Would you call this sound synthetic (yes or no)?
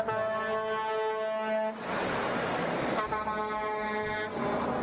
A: no